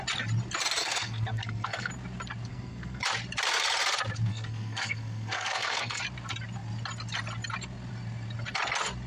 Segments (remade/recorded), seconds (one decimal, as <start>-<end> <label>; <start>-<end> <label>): 0.0-0.8 recorded; 0.8-1.9 remade; 1.9-2.5 recorded; 2.5-3.0 remade; 3.0-4.3 recorded; 4.3-6.0 remade; 6.0-9.1 recorded